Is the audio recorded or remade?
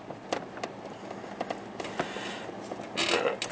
recorded